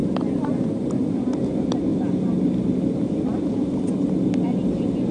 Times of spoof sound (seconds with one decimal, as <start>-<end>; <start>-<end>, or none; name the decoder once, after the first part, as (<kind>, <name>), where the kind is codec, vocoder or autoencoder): none